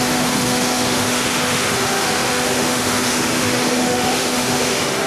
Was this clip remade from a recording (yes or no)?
yes